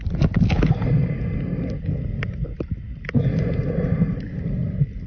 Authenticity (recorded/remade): recorded